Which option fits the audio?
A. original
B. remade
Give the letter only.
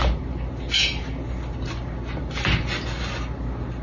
A